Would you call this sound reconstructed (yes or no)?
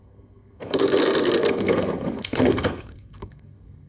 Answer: yes